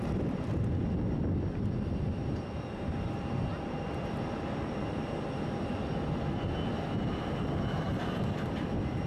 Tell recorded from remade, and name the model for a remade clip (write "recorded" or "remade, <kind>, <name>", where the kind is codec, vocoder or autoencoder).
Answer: recorded